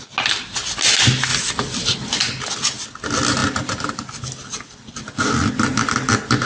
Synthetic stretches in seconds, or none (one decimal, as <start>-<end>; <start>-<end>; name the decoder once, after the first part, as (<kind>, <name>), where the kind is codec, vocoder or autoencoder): none